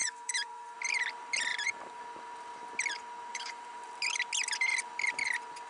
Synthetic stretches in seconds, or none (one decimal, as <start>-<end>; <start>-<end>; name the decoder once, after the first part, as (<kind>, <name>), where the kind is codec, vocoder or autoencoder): 0.0-0.8 (vocoder, BigVGAN v2); 1.5-2.0; 3.3-4.0